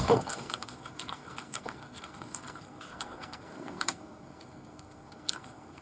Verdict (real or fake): fake